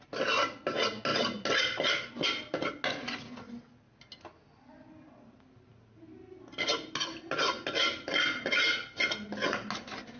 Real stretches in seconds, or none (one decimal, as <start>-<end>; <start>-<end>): 0.0-10.2